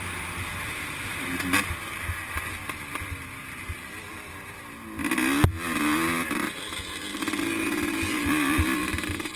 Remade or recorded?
recorded